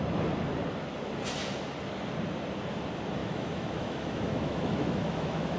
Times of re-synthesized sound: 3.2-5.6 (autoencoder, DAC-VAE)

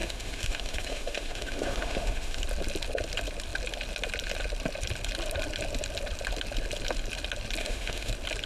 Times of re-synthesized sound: 0.0-2.4 (autoencoder, DAC-VAE); 7.6-8.1

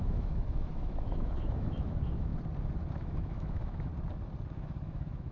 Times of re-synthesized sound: 0.0-2.3 (autoencoder, DAC-VAE); 2.9-3.9; 4.5-5.3

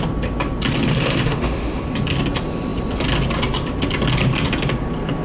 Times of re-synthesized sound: 0.9-1.8 (autoencoder, DAC-VAE)

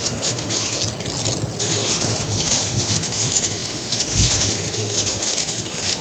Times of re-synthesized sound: 0.0-0.8 (autoencoder, DAC-VAE); 1.6-6.0